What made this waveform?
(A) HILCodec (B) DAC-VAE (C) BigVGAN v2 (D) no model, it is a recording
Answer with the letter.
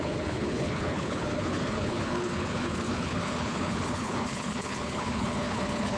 A